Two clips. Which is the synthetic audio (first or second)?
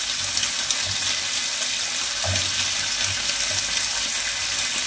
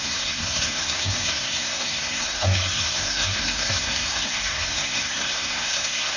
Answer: second